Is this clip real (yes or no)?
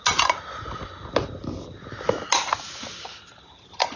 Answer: yes